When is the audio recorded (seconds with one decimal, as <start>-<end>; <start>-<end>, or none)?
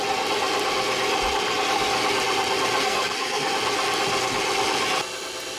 0.0-2.8; 3.5-5.6